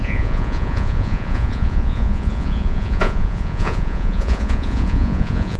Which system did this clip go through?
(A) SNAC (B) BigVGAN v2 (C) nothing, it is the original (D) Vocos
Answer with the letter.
D